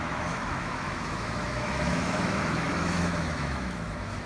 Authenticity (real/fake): fake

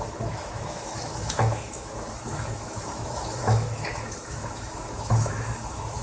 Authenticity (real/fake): fake